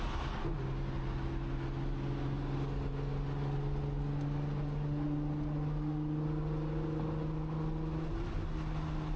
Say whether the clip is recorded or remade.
recorded